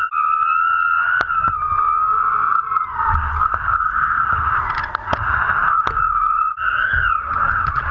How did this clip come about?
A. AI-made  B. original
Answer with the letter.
B